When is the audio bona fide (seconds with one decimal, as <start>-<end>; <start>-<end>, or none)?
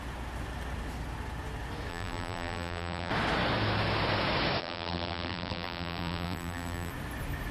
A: 0.0-1.9; 3.1-4.6; 6.9-7.5